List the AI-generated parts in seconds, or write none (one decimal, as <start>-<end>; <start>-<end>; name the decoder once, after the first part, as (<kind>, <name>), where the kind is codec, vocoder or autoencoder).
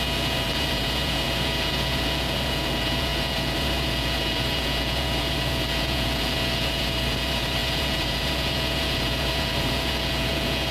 0.0-10.7 (vocoder, Vocos)